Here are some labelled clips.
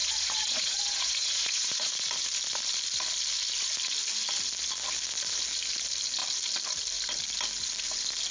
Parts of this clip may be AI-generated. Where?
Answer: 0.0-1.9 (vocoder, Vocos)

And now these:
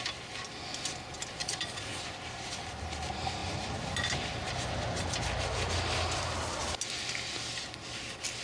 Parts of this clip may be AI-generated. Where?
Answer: 1.4-2.0 (vocoder, Vocos)

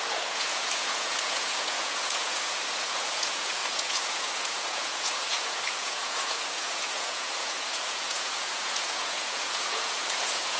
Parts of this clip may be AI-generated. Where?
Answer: 0.0-10.6 (vocoder, Vocos)